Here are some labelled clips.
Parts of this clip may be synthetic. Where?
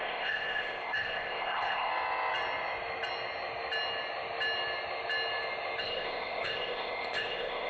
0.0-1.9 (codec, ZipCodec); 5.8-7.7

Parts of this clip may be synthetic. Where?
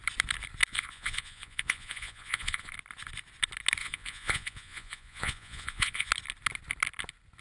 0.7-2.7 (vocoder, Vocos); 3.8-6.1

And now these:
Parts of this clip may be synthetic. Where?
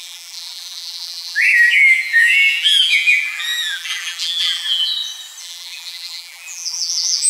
0.0-4.9 (vocoder, BigVGAN v2); 5.4-7.3